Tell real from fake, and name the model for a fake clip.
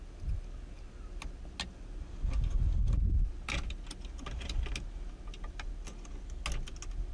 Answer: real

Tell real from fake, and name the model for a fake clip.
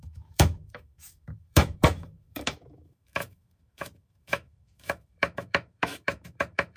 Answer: fake, autoencoder, DAC-VAE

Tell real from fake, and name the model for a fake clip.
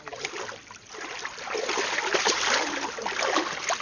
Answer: real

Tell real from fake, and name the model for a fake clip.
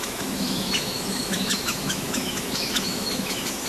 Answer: fake, autoencoder, DAC-VAE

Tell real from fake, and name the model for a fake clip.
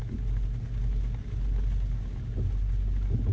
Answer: real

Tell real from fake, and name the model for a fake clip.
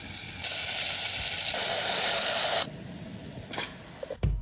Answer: real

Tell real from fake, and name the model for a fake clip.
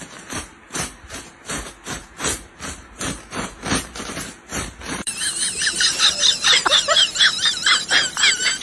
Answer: fake, vocoder, BigVGAN v2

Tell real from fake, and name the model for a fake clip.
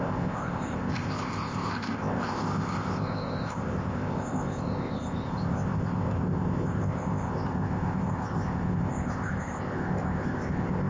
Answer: fake, codec, ZipCodec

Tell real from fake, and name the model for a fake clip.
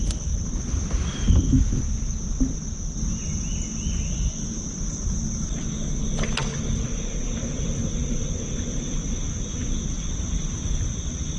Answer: real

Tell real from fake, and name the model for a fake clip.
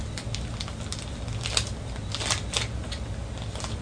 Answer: real